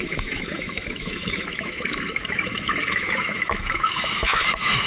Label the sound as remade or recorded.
remade